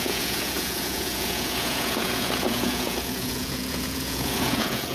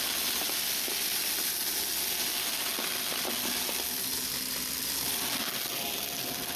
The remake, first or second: first